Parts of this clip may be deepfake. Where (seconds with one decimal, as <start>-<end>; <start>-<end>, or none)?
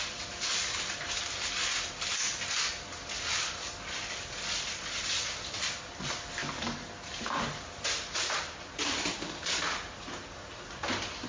none